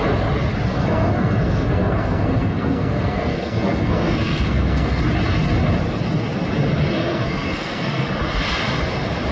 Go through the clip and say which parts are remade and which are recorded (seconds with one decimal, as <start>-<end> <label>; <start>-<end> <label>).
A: 0.0-0.8 recorded; 0.8-5.0 remade; 5.0-7.0 recorded; 7.0-8.1 remade; 8.1-9.3 recorded

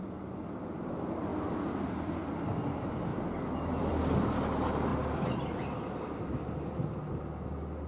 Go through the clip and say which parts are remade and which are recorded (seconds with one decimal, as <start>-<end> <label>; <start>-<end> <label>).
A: 0.0-1.3 recorded; 1.3-2.2 remade; 2.2-3.1 recorded; 3.1-3.9 remade; 3.9-4.9 recorded; 4.9-5.4 remade; 5.4-7.9 recorded

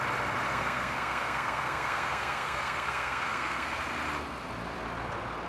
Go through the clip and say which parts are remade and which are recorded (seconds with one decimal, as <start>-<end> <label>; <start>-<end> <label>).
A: 0.0-0.5 recorded; 0.5-3.8 remade; 3.8-5.5 recorded

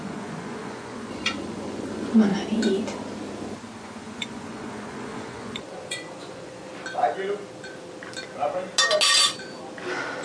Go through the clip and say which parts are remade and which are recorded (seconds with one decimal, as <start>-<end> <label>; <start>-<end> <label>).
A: 0.0-2.3 remade; 2.3-3.8 recorded; 3.8-6.7 remade; 6.7-10.2 recorded

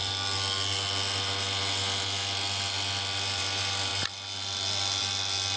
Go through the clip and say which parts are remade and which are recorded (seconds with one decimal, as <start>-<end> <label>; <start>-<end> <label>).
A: 0.0-5.6 recorded